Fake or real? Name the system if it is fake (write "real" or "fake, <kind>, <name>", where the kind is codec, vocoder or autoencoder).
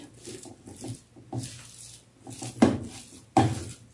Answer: real